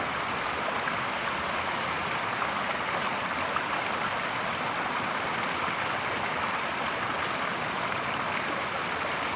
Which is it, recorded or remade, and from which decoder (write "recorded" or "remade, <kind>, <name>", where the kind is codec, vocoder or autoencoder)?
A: recorded